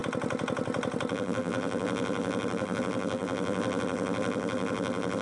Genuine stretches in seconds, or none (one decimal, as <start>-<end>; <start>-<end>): 0.0-1.1